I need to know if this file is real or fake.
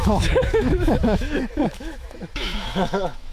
fake